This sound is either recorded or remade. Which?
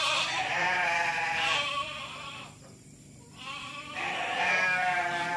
remade